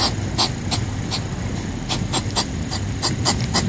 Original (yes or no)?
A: yes